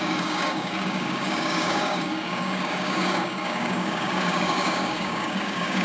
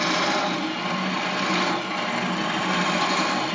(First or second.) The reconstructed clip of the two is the first